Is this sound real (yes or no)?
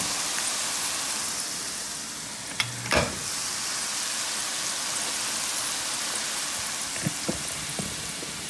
yes